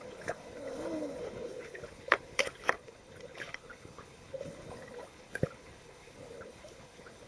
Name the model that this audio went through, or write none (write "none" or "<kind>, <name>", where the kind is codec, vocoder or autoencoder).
codec, HILCodec